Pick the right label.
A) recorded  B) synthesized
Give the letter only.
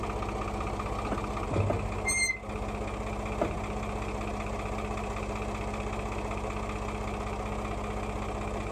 A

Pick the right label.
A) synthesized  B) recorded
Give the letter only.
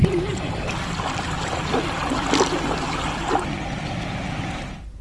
A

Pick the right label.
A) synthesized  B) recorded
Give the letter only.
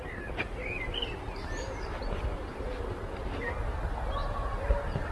B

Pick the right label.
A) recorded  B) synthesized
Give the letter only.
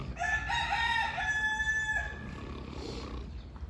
A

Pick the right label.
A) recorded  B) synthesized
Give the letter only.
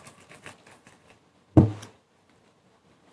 B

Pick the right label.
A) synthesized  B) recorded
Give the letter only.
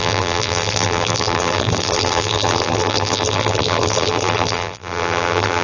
A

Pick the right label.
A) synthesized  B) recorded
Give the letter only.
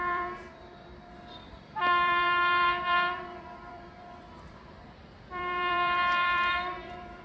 A